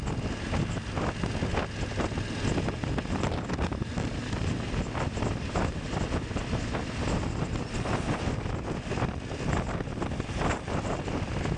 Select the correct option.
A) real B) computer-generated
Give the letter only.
A